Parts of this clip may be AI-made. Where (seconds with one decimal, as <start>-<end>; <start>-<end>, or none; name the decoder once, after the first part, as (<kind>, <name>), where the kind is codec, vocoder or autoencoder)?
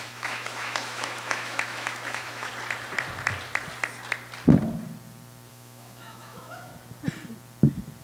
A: 0.0-2.5 (autoencoder, DAC-VAE); 5.5-6.7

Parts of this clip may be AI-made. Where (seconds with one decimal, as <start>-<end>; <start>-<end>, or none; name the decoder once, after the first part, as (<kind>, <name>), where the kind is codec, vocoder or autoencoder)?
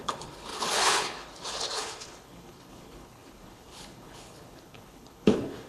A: 0.0-5.7 (codec, HILCodec)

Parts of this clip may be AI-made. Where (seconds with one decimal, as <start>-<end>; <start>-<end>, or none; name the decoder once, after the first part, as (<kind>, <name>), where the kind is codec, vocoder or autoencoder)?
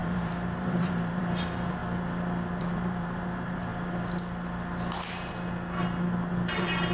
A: 0.0-1.8 (vocoder, BigVGAN v2); 2.6-3.7; 6.5-6.9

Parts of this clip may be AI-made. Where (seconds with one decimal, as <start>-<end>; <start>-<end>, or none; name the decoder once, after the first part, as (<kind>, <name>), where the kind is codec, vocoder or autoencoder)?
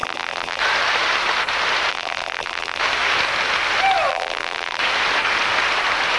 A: 0.0-0.6 (vocoder, BigVGAN v2); 1.9-2.8; 4.1-4.8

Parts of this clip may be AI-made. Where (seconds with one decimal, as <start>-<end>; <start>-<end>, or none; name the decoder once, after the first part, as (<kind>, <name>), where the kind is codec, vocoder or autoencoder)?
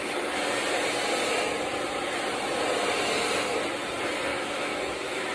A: 4.3-5.3 (autoencoder, DAC-VAE)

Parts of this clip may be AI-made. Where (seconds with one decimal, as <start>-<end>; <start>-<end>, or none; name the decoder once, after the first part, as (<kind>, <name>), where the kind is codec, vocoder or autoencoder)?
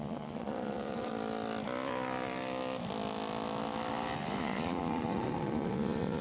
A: 0.0-1.1 (vocoder, Vocos); 4.4-6.2